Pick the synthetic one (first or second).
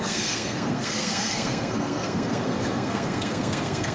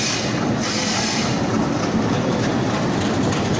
first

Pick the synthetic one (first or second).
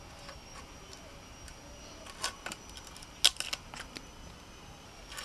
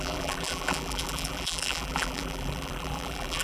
second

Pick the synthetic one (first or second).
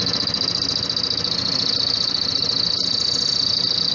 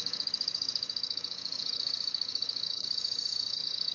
second